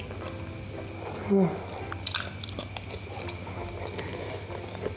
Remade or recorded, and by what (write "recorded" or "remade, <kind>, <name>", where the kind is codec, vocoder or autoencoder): recorded